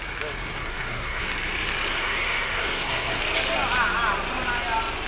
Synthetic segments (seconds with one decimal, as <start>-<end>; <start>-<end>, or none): 0.6-1.2; 1.9-3.2